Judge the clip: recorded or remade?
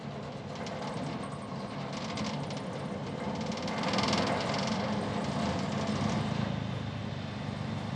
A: recorded